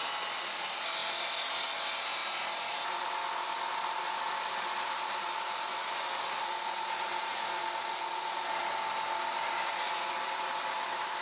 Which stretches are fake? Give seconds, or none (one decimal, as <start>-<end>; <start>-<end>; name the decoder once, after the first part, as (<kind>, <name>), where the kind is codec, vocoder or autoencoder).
none